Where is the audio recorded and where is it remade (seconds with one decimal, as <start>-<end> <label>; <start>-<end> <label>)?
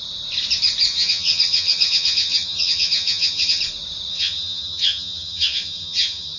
0.0-0.9 recorded; 0.9-3.6 remade; 3.6-4.1 recorded; 4.1-6.4 remade